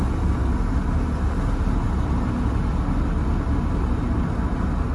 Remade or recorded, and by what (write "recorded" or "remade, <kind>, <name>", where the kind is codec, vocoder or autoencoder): recorded